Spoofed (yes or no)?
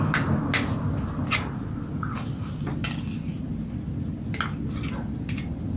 no